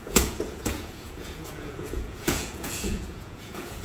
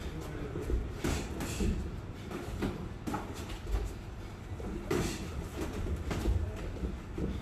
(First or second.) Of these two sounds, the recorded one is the second